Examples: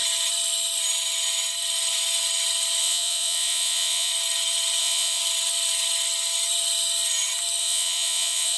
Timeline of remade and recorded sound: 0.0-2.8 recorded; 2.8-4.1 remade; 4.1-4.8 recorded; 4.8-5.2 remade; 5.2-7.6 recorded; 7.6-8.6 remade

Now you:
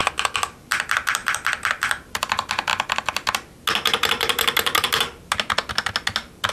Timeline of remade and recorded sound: 0.0-1.2 recorded; 1.2-2.2 remade; 2.2-6.5 recorded

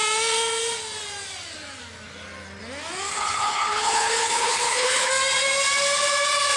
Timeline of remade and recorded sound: 0.0-3.1 recorded; 3.1-5.1 remade; 5.1-6.6 recorded